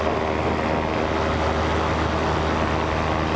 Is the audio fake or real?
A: real